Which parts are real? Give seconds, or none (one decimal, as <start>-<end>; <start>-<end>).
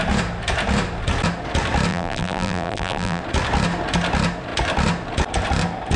0.0-1.9; 3.2-6.0